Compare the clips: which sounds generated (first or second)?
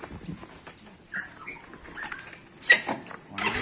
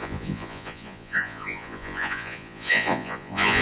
second